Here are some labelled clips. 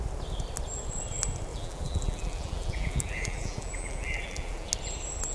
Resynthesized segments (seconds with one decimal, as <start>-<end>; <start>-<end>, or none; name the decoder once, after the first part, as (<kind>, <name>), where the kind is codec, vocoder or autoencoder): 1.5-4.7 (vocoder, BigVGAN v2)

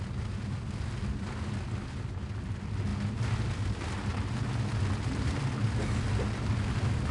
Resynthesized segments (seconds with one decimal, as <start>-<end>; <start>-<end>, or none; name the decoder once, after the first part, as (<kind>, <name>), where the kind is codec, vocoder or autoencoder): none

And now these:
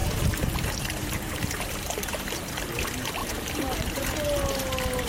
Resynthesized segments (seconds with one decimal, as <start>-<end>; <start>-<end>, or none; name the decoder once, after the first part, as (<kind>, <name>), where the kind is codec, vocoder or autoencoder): 0.0-2.2 (vocoder, BigVGAN v2); 3.2-4.0

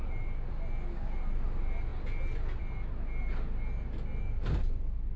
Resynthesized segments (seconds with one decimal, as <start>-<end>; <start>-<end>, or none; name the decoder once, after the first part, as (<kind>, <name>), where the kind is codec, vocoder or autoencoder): none

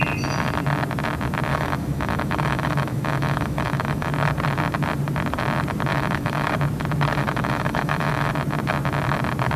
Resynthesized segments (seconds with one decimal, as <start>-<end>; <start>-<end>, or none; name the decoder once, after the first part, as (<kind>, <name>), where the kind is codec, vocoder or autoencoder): 1.5-4.1 (autoencoder, DAC-VAE); 5.9-6.5; 7.2-8.3

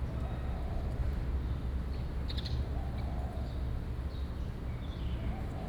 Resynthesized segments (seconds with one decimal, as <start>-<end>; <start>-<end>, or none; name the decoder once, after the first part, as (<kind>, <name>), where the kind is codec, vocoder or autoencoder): none

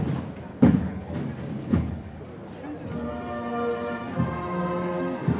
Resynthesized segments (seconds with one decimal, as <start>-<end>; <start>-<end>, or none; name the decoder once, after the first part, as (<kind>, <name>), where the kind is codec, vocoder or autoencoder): 0.5-1.1 (codec, HILCodec); 1.6-2.2